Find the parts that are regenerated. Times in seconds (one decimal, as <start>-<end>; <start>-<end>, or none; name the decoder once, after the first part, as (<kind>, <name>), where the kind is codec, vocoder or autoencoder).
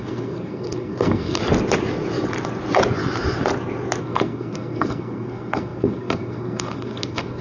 0.0-1.4 (codec, SNAC); 4.0-7.4